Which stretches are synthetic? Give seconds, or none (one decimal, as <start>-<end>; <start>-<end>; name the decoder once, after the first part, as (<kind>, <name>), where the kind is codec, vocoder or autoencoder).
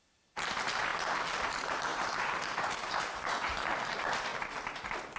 0.0-0.9 (vocoder, BigVGAN v2); 1.5-4.3